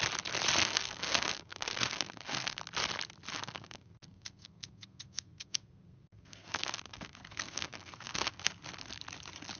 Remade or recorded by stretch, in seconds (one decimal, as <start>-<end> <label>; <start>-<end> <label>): 0.0-0.6 recorded; 0.6-2.6 remade; 2.6-3.3 recorded; 3.3-8.6 remade; 8.6-9.6 recorded

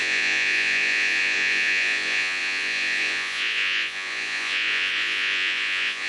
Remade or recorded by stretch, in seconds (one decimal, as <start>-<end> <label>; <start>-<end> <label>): 0.0-6.1 remade

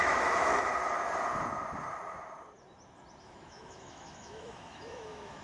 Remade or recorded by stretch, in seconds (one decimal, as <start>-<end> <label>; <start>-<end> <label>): 0.0-0.7 remade; 0.7-3.2 recorded; 3.2-5.4 remade

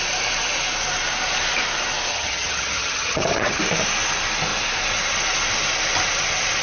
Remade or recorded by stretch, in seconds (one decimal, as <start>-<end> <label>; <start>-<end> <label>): 0.0-2.1 recorded; 2.1-3.6 remade; 3.6-6.6 recorded

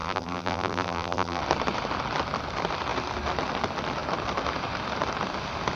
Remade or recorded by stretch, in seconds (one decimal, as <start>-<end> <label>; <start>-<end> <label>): 0.0-1.4 remade; 1.4-5.8 recorded

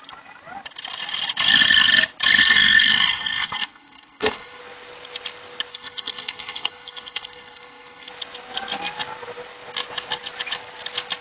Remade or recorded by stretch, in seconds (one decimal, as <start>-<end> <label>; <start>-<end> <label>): 0.0-2.4 recorded; 2.4-4.6 remade; 4.6-5.7 recorded; 5.7-8.1 remade; 8.1-11.2 recorded

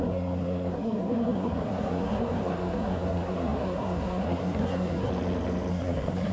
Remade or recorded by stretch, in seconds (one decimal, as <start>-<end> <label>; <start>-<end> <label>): 0.0-5.1 remade; 5.1-5.7 recorded; 5.7-6.3 remade